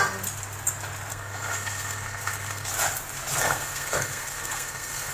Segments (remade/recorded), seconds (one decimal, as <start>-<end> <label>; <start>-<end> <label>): 0.0-1.1 recorded; 1.1-2.7 remade; 2.7-3.4 recorded; 3.4-5.1 remade